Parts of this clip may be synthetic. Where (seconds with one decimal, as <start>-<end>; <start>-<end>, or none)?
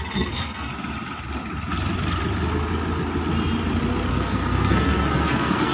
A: 0.0-0.7; 4.1-5.7